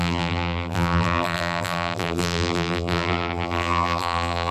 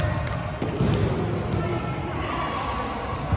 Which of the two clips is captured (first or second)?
second